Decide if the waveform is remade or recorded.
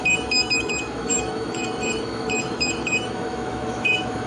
remade